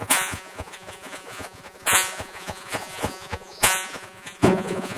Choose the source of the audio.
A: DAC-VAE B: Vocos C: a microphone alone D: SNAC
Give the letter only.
B